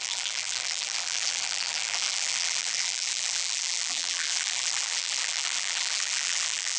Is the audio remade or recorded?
remade